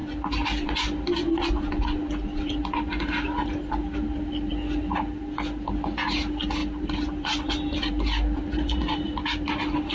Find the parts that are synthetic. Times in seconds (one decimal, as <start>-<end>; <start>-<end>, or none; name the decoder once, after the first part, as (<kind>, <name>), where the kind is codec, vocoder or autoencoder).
none